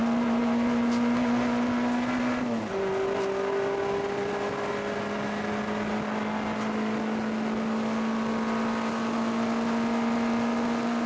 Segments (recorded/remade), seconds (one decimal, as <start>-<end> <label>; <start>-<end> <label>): 0.0-11.1 recorded